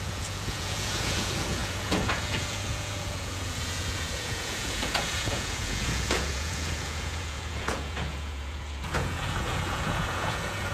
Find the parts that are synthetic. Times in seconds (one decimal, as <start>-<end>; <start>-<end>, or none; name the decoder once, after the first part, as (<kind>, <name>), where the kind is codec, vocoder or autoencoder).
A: 0.0-10.7 (vocoder, Vocos)